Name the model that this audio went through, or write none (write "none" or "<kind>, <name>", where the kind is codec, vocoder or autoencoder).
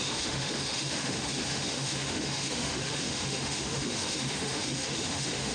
autoencoder, DAC-VAE